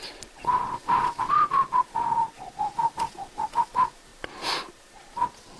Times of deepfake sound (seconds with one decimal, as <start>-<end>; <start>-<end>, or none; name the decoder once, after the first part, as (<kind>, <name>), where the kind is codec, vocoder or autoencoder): 0.0-5.6 (vocoder, Vocos)